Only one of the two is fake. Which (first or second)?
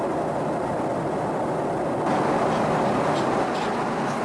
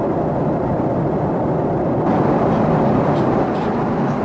second